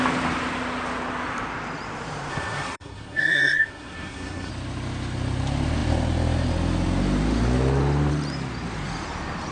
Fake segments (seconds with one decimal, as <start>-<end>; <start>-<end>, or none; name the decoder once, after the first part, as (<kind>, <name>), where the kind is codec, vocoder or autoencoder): 2.3-4.5 (codec, SNAC)

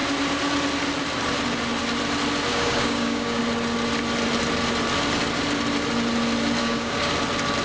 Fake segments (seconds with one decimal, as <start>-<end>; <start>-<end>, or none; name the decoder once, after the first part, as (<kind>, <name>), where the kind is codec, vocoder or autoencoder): 2.5-3.4 (codec, DAC); 6.6-7.1

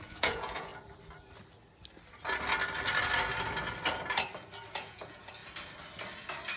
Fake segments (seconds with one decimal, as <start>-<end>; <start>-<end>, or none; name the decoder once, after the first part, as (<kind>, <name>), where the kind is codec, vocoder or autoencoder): 0.0-0.7 (vocoder, Vocos); 4.7-5.4

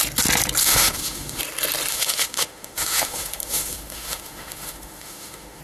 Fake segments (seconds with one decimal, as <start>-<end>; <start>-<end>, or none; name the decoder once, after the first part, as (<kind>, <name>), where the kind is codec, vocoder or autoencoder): 0.6-1.4 (autoencoder, DAC-VAE); 1.9-5.6

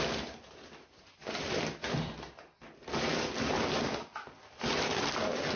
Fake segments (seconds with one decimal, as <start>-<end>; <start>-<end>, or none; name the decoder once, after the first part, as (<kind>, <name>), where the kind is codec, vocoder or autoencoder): none

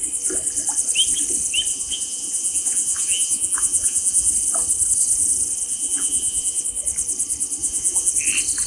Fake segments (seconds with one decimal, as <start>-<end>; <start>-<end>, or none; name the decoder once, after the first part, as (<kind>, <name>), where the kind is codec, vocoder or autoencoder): 1.7-4.3 (vocoder, Vocos); 5.7-6.6; 7.6-8.1

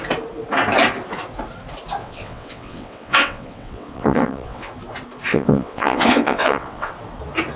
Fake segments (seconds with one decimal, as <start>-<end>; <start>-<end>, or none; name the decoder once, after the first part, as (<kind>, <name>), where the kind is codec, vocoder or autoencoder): 2.0-4.7 (vocoder, WaveNeXt); 5.3-6.9